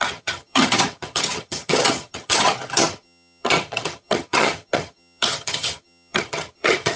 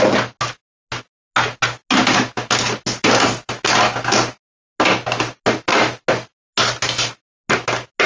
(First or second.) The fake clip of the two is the first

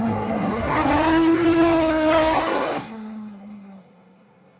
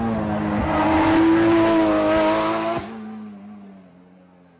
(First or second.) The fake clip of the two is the first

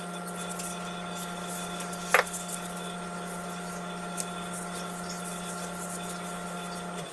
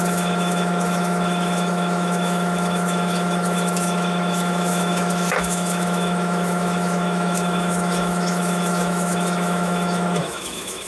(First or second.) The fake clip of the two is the second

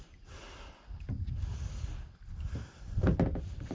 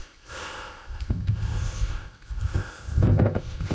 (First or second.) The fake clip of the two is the second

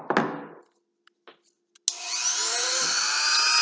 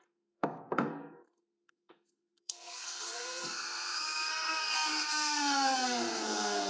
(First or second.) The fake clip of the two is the second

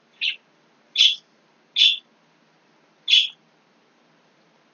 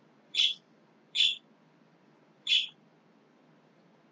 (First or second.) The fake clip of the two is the second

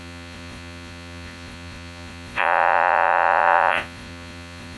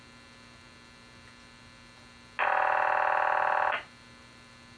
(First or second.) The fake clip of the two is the first